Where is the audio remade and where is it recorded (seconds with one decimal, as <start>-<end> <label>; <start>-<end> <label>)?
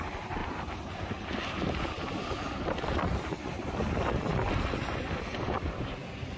0.0-6.4 recorded